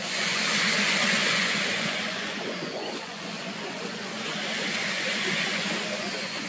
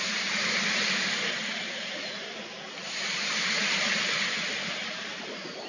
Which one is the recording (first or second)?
second